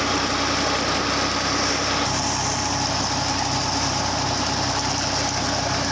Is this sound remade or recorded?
recorded